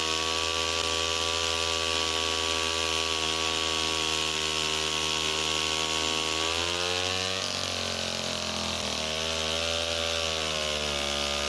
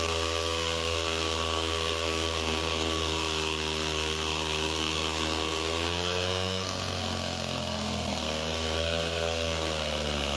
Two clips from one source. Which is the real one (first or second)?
first